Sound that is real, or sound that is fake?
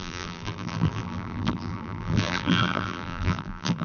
fake